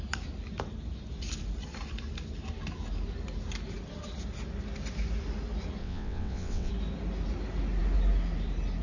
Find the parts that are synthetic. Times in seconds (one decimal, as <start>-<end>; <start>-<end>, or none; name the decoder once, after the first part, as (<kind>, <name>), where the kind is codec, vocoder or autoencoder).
5.8-6.7 (vocoder, WaveNeXt)